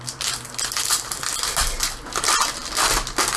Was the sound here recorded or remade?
recorded